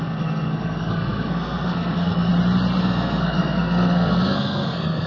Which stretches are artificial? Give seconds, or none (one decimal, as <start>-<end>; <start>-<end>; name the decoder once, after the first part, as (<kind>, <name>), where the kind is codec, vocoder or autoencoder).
0.0-2.3 (codec, SNAC); 2.8-5.1